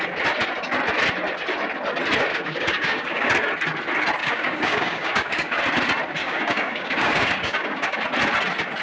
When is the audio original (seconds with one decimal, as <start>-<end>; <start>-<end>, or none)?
0.0-2.3; 3.3-4.2; 5.6-6.2; 8.0-8.8